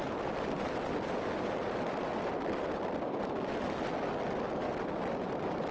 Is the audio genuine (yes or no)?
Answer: yes